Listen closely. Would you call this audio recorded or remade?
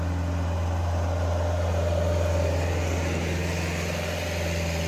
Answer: recorded